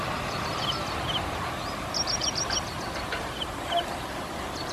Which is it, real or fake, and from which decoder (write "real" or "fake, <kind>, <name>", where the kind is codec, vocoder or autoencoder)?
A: real